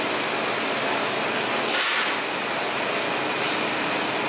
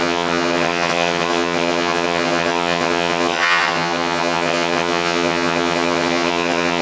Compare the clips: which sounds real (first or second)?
first